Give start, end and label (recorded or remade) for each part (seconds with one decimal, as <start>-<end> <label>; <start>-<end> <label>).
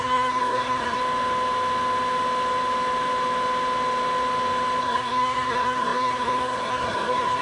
0.0-1.0 remade; 1.0-4.8 recorded; 4.8-7.4 remade